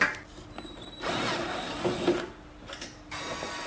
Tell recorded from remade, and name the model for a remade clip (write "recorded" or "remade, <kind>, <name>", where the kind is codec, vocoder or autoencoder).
recorded